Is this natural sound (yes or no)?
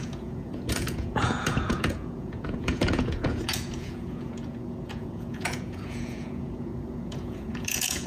no